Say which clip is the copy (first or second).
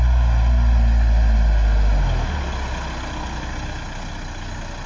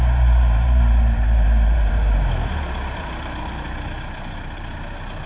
second